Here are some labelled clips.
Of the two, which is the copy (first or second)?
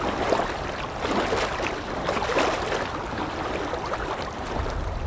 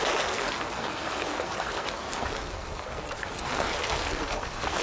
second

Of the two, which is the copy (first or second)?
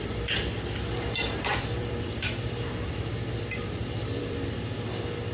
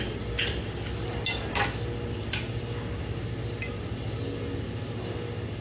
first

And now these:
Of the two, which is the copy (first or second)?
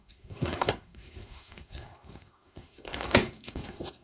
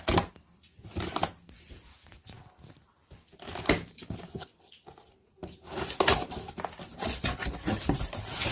first